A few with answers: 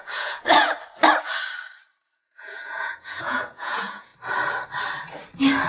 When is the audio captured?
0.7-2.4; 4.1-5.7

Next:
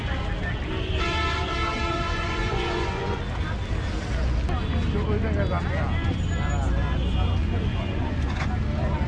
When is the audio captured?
0.0-1.9; 3.2-7.4; 8.5-9.1

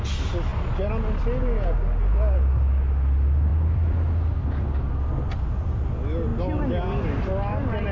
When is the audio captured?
0.0-7.9

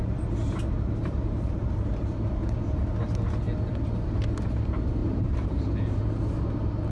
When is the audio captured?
0.0-1.0; 2.3-5.0; 6.0-6.9

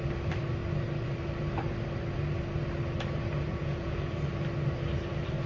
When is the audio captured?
0.0-3.5; 4.1-5.5